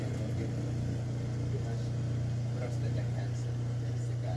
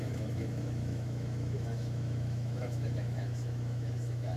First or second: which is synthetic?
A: second